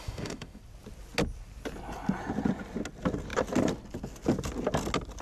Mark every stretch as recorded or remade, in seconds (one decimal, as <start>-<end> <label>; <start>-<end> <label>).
0.0-0.6 remade; 0.6-5.2 recorded